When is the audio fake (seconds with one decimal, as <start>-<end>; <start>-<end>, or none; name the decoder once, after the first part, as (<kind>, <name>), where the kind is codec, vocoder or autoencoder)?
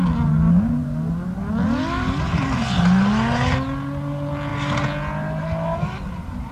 none